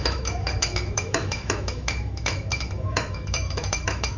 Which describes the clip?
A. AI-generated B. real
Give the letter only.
A